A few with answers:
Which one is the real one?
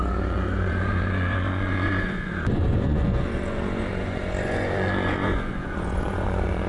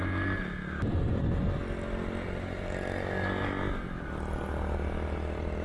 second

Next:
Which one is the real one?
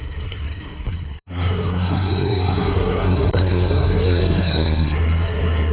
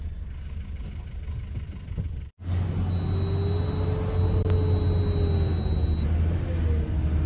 second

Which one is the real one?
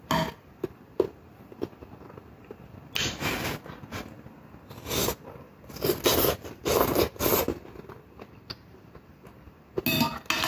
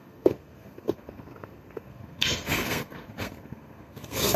first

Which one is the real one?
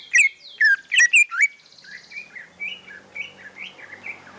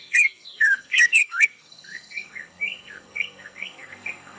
first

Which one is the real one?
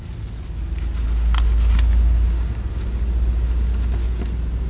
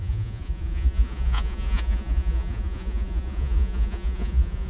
first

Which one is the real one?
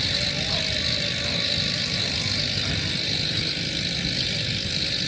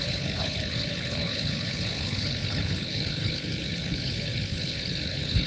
first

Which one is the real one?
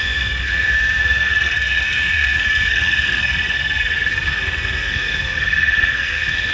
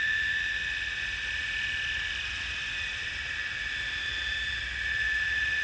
second